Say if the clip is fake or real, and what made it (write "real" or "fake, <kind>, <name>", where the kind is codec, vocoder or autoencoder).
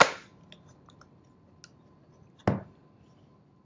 real